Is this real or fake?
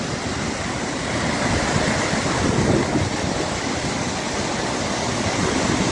real